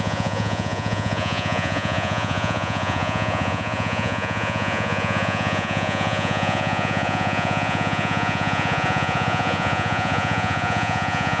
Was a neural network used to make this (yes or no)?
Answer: yes